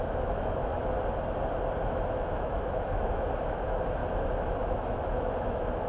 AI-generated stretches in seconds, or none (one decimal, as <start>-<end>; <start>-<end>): 0.0-0.7; 1.9-4.0; 4.5-5.9